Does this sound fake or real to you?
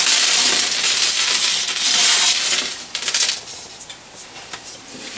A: fake